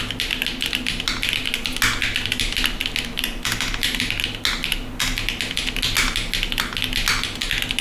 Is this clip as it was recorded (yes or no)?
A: yes